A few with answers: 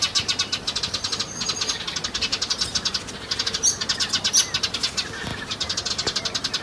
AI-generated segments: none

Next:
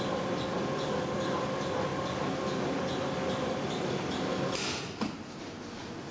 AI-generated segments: none

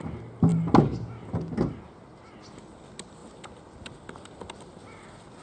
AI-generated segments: none